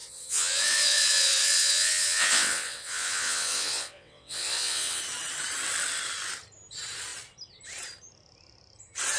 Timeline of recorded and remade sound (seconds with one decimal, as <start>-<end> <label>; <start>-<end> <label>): 0.0-5.0 remade; 5.0-9.2 recorded